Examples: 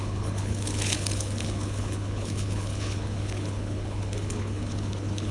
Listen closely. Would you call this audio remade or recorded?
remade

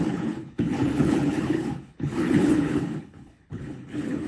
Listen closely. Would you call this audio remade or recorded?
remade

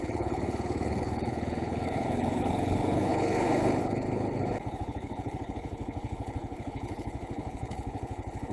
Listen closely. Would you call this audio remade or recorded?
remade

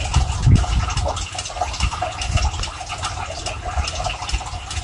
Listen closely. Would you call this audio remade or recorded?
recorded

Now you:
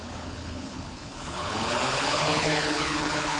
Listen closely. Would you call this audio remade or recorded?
remade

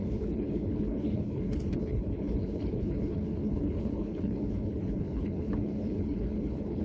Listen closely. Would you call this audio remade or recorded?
remade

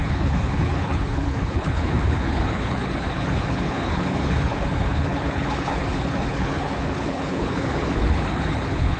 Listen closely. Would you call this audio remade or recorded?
remade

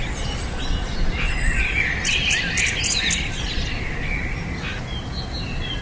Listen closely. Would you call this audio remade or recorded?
recorded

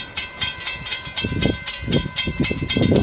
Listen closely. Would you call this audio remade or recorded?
recorded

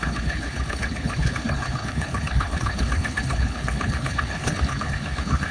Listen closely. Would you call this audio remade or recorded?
remade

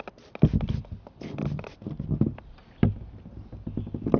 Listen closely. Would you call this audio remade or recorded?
recorded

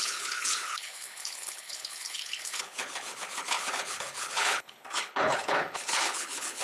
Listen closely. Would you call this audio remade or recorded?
remade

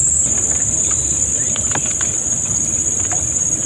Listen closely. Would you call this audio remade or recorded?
recorded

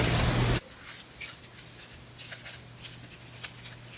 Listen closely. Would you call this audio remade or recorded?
recorded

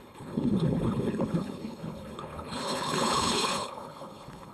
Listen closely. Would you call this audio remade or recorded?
remade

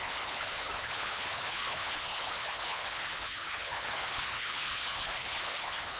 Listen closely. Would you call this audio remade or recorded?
remade